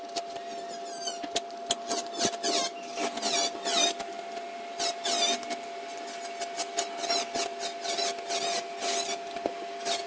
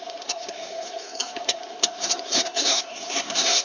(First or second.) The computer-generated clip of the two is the second